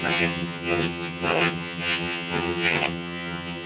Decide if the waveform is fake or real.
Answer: fake